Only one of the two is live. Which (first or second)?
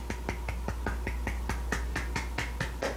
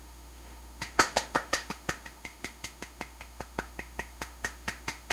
first